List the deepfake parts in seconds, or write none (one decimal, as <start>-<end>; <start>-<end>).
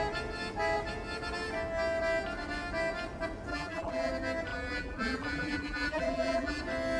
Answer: 3.5-4.1; 4.5-6.6